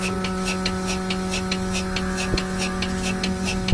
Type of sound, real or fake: real